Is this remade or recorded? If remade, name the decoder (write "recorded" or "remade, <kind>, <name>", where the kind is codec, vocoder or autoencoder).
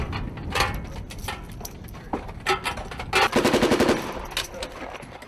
recorded